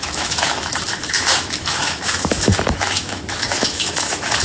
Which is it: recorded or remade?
remade